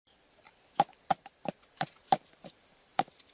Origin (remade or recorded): recorded